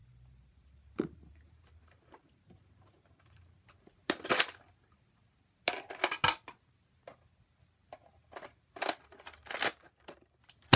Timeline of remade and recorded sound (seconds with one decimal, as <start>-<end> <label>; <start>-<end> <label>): 0.0-3.7 remade; 3.7-9.7 recorded; 9.7-10.4 remade; 10.4-10.8 recorded